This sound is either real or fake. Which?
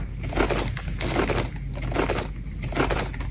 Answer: real